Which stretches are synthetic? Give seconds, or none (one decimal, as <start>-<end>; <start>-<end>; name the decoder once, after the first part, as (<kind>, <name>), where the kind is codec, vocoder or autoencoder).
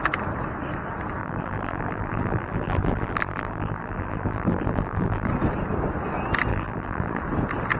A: 1.2-5.3 (vocoder, BigVGAN v2); 6.5-7.2